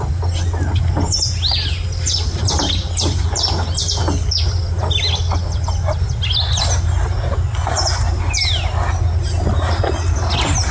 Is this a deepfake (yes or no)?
no